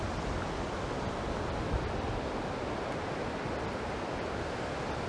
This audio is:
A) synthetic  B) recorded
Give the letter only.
B